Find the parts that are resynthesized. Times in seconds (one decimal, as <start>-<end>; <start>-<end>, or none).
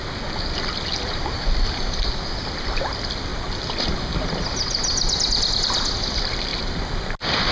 none